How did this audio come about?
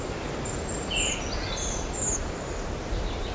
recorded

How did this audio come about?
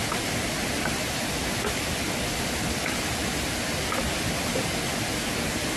recorded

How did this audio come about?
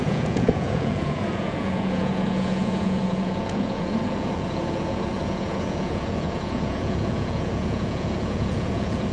remade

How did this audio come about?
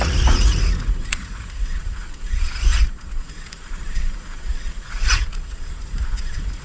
remade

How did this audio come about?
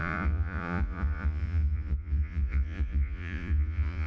remade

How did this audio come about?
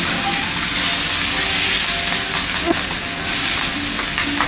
recorded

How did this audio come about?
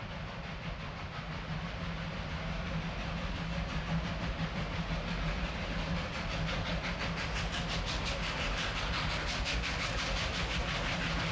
recorded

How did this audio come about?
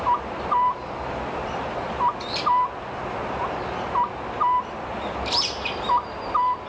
recorded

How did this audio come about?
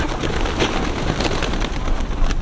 recorded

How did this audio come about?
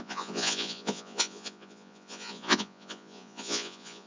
remade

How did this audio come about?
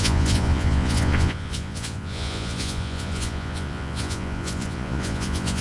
remade